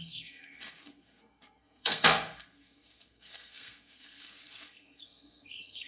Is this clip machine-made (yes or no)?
yes